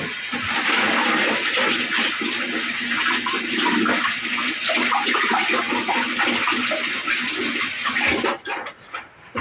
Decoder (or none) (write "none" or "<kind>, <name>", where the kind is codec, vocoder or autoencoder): none